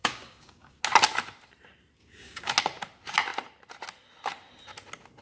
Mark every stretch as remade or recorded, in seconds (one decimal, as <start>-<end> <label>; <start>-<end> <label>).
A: 0.0-0.8 remade; 0.8-2.0 recorded; 2.0-2.5 remade; 2.5-5.2 recorded